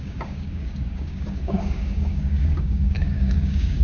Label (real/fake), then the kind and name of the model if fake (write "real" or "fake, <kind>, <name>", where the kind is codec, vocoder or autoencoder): fake, codec, DAC